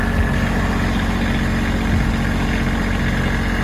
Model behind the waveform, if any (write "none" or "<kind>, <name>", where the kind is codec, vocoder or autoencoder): none